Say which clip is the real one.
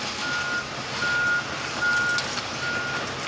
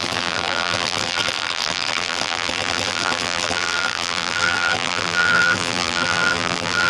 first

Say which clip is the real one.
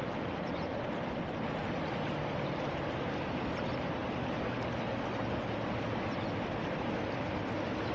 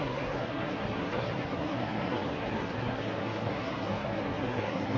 first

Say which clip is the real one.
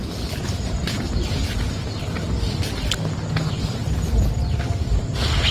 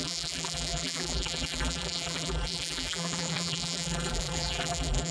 first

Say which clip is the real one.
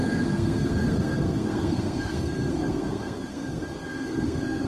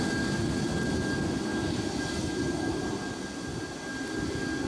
second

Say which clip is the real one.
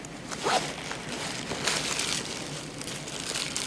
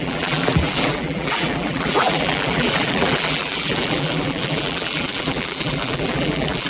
first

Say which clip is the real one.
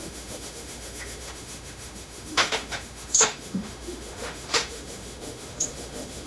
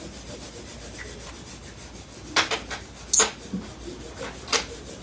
second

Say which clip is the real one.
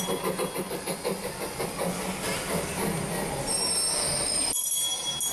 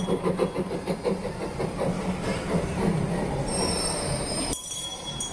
first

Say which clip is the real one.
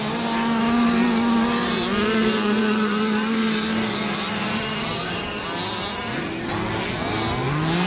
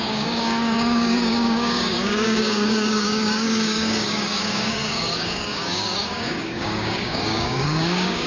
first